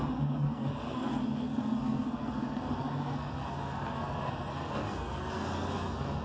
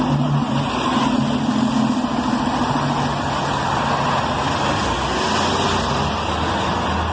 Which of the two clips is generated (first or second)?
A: first